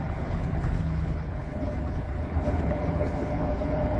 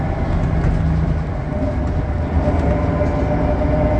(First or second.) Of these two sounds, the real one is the second